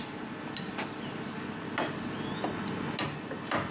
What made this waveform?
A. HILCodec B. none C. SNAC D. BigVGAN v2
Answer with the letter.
B